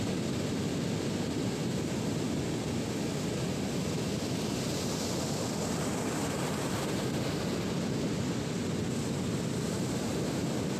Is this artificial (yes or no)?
no